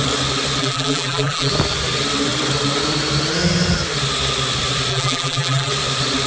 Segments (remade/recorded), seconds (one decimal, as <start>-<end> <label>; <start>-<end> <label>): 0.0-0.6 recorded; 0.6-1.5 remade; 1.5-4.9 recorded; 4.9-5.7 remade; 5.7-6.3 recorded